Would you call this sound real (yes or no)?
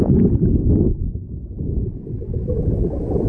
yes